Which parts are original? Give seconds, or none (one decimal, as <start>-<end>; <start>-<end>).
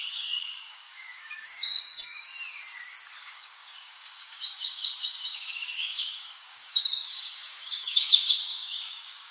2.3-3.2